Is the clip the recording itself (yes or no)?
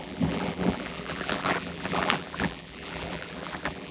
no